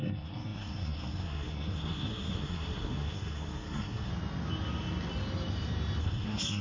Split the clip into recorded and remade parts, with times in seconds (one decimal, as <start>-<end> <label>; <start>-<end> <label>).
0.0-4.1 remade; 4.1-6.0 recorded; 6.0-6.6 remade